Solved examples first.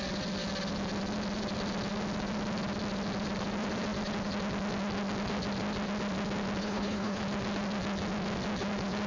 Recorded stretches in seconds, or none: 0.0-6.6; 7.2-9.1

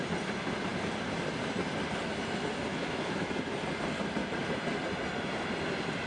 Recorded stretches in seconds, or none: 0.0-2.7; 3.3-6.1

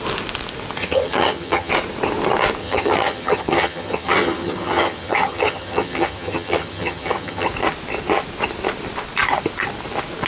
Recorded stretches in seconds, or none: 0.0-0.8; 1.7-2.6; 7.5-10.3

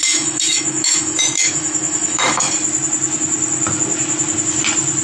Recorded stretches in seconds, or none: 2.5-5.0

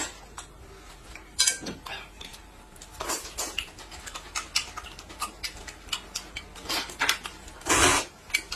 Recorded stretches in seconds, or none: 0.0-8.6

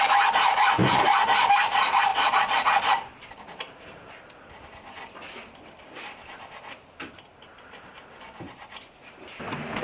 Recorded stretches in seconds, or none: 0.0-0.8; 1.5-2.1; 3.3-9.8